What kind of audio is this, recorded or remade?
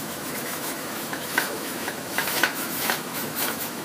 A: remade